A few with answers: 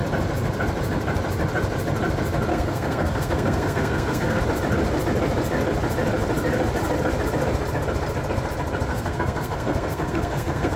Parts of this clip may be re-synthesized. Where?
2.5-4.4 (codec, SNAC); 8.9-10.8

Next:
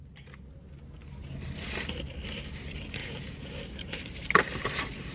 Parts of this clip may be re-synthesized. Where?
3.0-3.5 (vocoder, Vocos)